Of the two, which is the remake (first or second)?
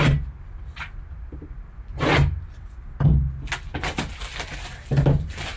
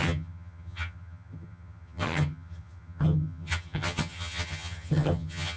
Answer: second